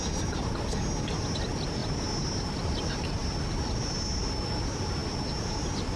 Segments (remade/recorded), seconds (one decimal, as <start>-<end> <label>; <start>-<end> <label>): 0.0-6.0 recorded